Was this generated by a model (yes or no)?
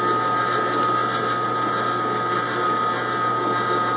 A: no